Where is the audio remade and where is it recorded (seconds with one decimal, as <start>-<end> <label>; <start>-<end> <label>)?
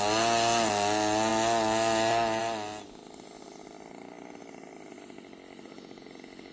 0.0-6.5 recorded